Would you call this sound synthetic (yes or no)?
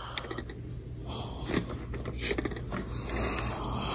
no